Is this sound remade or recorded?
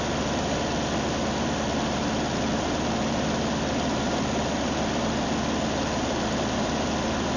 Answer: recorded